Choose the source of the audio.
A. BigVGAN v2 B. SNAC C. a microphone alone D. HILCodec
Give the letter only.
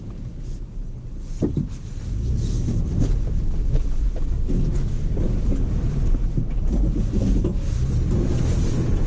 C